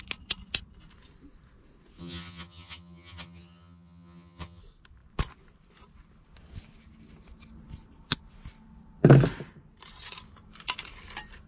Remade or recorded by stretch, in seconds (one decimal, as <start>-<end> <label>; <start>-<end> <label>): 0.0-2.0 recorded; 2.0-4.6 remade; 4.6-11.5 recorded